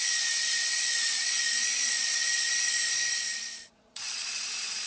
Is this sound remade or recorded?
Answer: remade